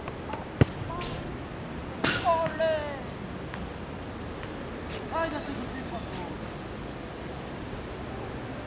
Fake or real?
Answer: real